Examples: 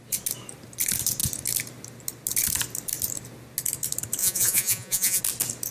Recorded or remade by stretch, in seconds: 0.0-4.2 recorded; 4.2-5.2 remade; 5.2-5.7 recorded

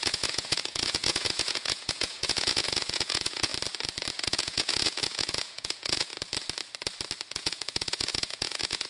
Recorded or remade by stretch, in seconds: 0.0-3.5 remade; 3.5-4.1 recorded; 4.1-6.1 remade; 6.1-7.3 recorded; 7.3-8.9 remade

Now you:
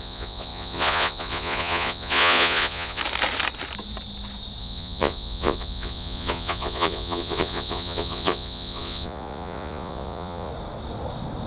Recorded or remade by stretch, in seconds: 0.0-3.0 remade; 3.0-4.6 recorded; 4.6-10.5 remade; 10.5-11.5 recorded